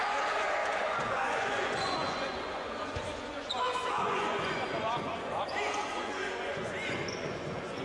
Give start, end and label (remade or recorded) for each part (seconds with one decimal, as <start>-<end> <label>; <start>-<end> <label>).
0.0-7.8 remade